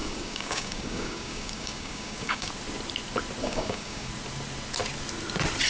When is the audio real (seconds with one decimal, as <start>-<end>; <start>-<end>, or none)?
2.5-3.4; 4.1-5.7